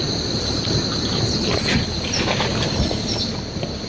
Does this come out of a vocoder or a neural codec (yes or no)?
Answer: no